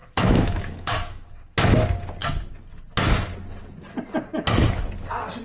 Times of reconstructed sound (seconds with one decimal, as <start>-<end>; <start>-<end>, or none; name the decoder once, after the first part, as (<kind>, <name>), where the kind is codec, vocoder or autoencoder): 0.0-1.3 (autoencoder, DAC-VAE)